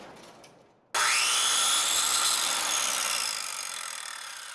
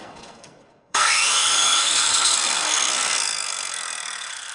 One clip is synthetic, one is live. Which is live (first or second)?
first